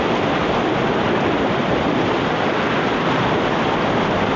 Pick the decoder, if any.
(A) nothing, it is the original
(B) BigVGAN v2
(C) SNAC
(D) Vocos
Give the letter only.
B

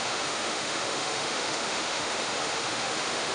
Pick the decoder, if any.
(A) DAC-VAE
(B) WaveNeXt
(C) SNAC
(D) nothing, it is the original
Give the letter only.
A